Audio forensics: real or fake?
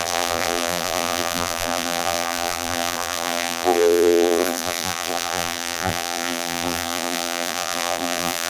fake